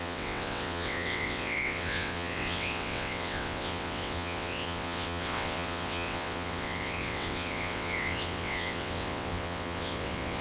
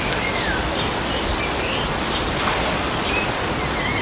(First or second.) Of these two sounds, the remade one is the first